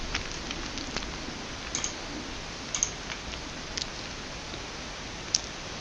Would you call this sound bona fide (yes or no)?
yes